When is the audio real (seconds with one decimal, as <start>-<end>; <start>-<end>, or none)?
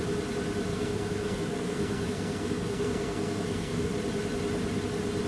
0.0-0.7; 3.9-5.3